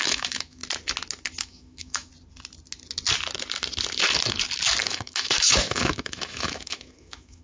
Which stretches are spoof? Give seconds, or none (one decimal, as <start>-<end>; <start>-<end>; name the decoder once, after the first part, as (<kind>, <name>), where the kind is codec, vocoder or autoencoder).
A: 0.0-0.6 (autoencoder, DAC-VAE); 1.4-2.1; 4.8-7.4